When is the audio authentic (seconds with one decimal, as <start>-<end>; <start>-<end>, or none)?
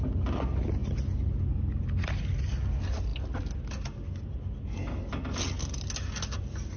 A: 0.0-6.8